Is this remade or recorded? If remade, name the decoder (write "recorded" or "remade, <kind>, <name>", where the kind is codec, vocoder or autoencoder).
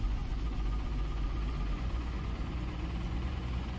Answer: remade, vocoder, Vocos